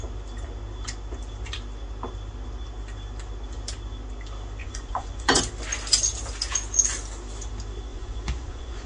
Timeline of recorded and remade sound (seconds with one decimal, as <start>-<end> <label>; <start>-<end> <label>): 0.0-4.6 recorded; 4.6-5.4 remade; 5.4-7.9 recorded; 7.9-8.9 remade